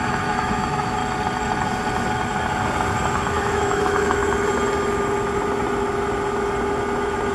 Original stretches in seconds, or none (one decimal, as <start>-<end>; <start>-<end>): 1.0-3.2; 4.2-7.3